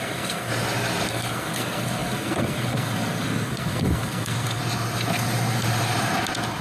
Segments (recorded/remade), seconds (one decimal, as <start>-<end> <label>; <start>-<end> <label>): 0.0-0.5 remade; 0.5-1.1 recorded; 1.1-4.6 remade; 4.6-6.6 recorded